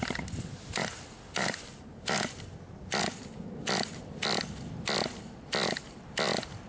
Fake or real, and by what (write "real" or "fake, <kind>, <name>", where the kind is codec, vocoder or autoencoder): real